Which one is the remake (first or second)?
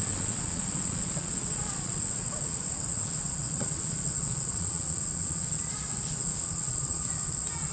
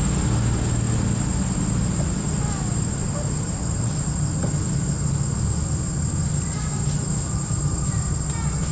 first